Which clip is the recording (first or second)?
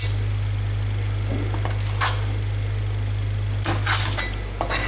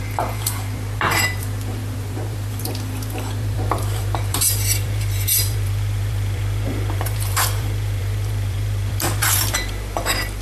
first